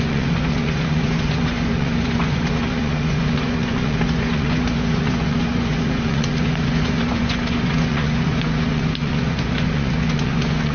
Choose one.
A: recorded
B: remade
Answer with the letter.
B